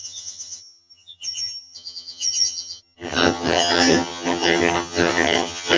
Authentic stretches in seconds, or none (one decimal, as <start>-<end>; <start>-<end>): none